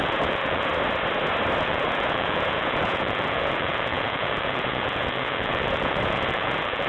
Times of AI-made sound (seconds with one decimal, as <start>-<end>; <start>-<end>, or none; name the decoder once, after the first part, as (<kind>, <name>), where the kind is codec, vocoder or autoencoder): 0.0-0.7 (vocoder, Vocos); 1.6-6.9

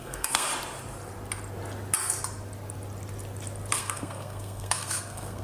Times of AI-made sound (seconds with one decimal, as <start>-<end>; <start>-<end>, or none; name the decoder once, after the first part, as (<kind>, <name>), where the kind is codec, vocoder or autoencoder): 0.0-0.5 (codec, SNAC); 3.7-5.4

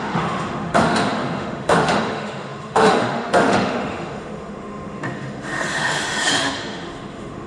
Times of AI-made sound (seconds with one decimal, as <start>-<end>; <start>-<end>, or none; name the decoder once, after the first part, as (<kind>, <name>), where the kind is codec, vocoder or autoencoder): 0.0-7.5 (autoencoder, DAC-VAE)

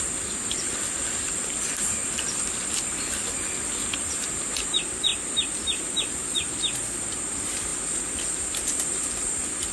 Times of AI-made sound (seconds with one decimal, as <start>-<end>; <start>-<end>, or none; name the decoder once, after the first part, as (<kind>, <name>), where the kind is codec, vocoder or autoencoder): none

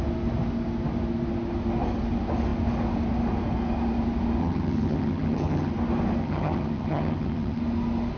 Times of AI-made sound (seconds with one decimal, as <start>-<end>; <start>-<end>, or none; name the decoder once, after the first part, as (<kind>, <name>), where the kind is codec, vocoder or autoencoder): 4.4-5.7 (vocoder, HiFi-GAN); 6.2-7.6

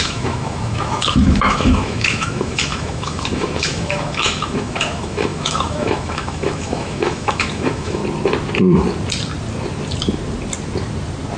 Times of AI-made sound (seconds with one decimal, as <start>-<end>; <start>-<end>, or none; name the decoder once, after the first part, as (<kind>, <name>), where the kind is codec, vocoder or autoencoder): 0.0-8.0 (autoencoder, DAC-VAE)

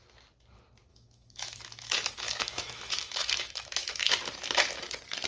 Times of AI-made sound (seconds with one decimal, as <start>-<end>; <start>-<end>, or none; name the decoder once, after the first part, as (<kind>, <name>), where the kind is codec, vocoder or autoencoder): 0.9-4.1 (autoencoder, DAC-VAE)

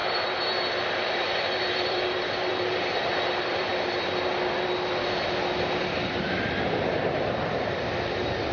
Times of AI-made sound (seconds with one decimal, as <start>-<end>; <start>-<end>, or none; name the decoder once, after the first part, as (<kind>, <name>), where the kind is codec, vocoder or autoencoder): 0.0-3.7 (vocoder, BigVGAN v2); 7.1-8.5